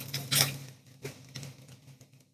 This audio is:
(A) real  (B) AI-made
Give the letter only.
A